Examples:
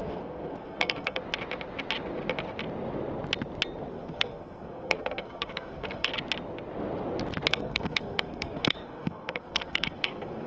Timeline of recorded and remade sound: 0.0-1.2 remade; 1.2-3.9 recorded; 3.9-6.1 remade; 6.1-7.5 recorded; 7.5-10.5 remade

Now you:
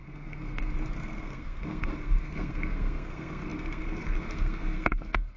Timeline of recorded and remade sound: 0.0-5.4 remade

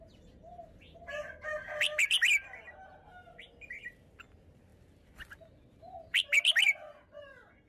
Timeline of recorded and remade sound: 0.0-7.7 recorded

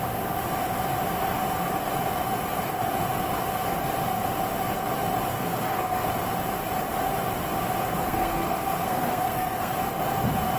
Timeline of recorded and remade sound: 0.0-5.3 recorded; 5.3-6.1 remade; 6.1-8.0 recorded; 8.0-9.7 remade; 9.7-10.6 recorded

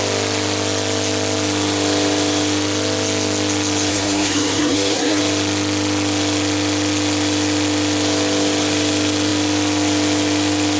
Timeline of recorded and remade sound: 0.0-3.9 recorded; 3.9-5.2 remade; 5.2-10.8 recorded

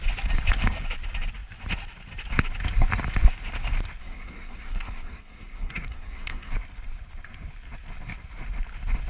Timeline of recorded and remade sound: 0.0-4.0 recorded; 4.0-6.5 remade; 6.5-9.1 recorded